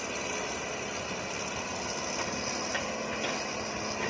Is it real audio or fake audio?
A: real